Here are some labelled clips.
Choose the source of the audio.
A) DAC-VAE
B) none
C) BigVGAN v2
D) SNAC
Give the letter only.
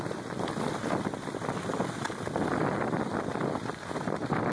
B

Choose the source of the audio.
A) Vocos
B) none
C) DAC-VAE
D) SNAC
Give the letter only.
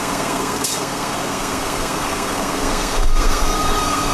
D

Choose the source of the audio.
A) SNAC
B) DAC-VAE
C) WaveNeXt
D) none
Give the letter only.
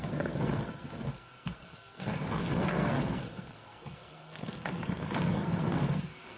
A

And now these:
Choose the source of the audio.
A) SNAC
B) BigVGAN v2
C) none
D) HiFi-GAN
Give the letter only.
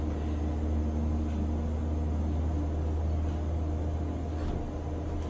C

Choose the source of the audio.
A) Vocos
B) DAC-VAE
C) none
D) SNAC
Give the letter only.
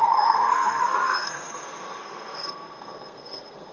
D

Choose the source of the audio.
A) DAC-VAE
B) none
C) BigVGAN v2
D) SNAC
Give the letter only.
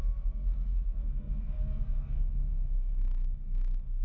D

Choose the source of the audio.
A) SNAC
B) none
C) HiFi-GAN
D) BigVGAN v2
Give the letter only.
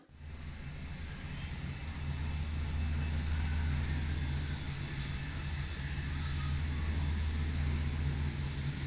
B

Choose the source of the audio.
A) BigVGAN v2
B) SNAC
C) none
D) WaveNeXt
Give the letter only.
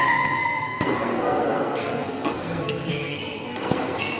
B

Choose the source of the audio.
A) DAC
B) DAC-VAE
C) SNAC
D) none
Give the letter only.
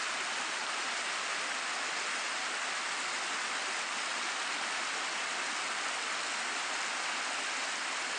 D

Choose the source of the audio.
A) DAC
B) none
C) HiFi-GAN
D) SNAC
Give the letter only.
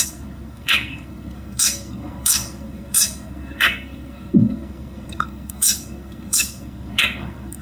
D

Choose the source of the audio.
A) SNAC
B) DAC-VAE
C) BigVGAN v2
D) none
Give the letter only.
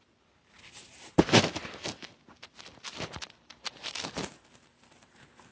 D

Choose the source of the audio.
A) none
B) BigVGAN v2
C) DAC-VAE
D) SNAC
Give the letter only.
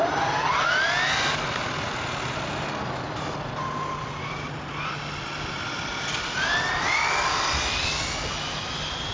A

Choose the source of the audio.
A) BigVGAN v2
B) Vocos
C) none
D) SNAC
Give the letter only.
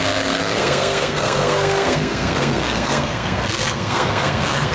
D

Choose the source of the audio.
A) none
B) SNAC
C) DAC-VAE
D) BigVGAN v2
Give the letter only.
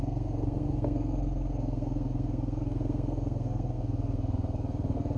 B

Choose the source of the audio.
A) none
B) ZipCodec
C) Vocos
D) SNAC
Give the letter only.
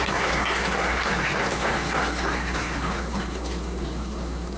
D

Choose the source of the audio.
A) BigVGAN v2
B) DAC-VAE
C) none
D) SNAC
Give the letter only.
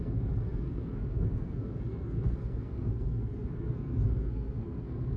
D